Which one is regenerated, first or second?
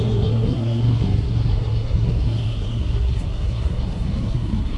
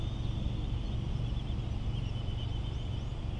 first